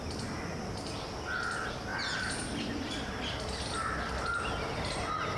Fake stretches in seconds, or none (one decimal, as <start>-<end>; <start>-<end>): none